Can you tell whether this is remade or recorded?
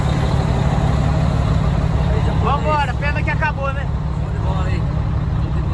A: recorded